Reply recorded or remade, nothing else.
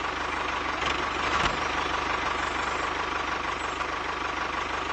recorded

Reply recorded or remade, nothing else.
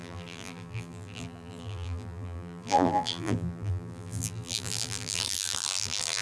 remade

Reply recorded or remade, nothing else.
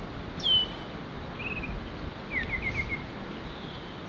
recorded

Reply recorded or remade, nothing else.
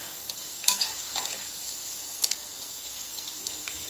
remade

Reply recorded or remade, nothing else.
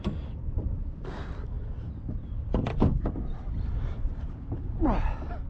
recorded